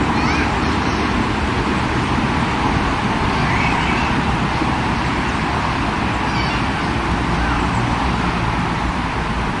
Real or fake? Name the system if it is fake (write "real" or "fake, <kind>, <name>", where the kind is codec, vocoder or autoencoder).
real